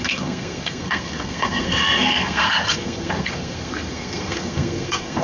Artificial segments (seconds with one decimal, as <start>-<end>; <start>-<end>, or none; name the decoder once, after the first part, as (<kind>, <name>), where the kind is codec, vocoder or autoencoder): 0.0-5.2 (codec, SNAC)